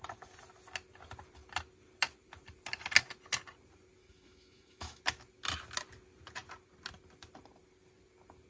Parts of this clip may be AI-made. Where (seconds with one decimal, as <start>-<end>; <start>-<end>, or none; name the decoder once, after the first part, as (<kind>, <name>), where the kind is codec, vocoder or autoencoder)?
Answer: 4.0-5.0 (autoencoder, DAC-VAE)